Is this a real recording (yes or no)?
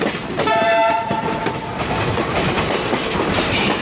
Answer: no